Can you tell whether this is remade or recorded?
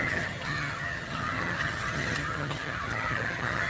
remade